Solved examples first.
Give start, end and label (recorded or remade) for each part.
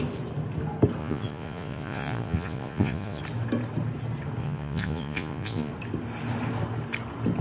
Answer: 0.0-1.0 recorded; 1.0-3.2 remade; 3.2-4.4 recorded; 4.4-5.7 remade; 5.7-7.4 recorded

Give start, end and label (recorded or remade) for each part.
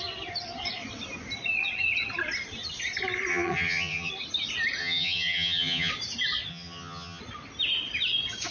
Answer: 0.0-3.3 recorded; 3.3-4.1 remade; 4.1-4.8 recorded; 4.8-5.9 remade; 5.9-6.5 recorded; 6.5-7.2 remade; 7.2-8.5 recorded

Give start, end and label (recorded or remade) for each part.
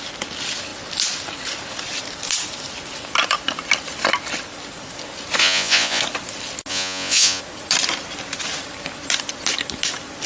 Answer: 0.0-5.4 recorded; 5.4-6.0 remade; 6.0-6.7 recorded; 6.7-7.4 remade; 7.4-10.3 recorded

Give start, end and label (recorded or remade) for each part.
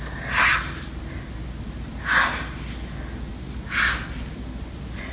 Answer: 0.0-5.1 recorded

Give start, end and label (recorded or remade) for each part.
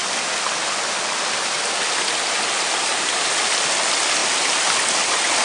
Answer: 0.0-5.4 recorded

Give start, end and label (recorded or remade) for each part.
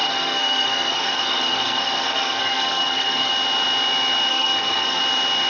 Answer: 0.0-3.3 remade; 3.3-4.3 recorded; 4.3-5.0 remade; 5.0-5.5 recorded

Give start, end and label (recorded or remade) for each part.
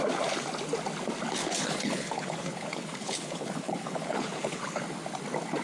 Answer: 0.0-1.4 recorded; 1.4-4.8 remade; 4.8-5.6 recorded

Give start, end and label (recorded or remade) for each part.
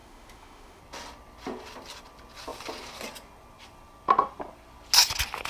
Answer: 0.0-0.8 remade; 0.8-5.5 recorded